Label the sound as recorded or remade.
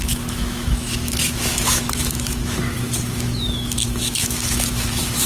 remade